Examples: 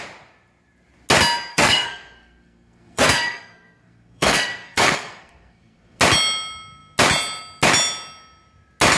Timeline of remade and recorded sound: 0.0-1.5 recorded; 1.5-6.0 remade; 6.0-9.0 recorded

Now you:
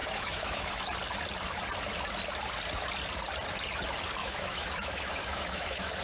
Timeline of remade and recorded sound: 0.0-0.8 remade; 0.8-4.2 recorded; 4.2-6.0 remade

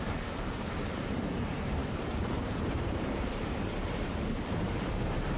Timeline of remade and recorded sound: 0.0-5.4 remade